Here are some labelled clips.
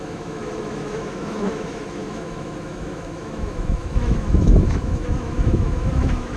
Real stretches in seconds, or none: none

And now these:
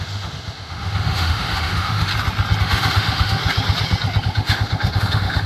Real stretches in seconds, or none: 2.1-2.6; 3.4-4.2

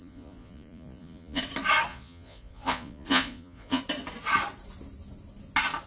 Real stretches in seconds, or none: 1.4-1.9; 3.8-5.9